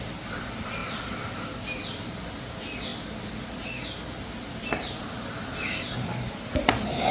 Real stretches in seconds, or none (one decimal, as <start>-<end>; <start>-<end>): 0.0-7.1